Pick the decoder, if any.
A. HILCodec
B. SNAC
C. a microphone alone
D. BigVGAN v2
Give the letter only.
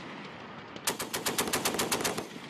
C